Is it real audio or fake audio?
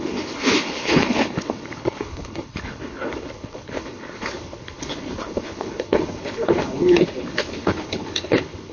fake